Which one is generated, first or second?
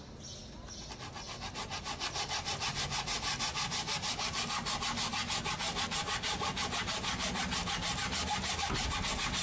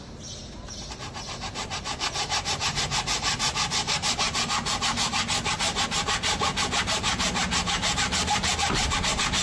second